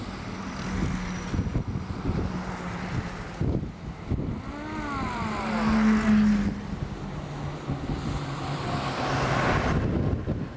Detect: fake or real real